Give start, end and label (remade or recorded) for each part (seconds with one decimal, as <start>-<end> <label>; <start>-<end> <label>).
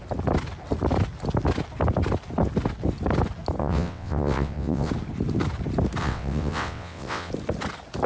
0.0-3.6 recorded; 3.6-4.9 remade; 4.9-6.0 recorded; 6.0-7.3 remade; 7.3-8.1 recorded